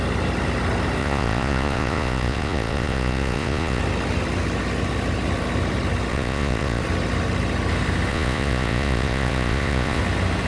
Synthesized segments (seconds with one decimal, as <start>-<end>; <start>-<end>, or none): 1.0-3.8; 6.1-6.8; 8.1-10.0